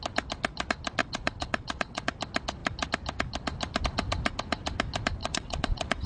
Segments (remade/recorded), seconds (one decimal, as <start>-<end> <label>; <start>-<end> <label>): 0.0-1.0 recorded; 1.0-2.1 remade; 2.1-5.2 recorded; 5.2-6.1 remade